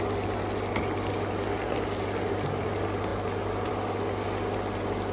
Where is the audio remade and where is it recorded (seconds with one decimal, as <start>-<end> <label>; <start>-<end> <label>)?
0.0-5.1 recorded